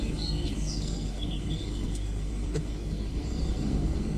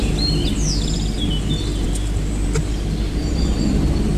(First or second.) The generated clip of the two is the first